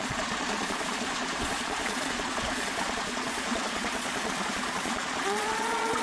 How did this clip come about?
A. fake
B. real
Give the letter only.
A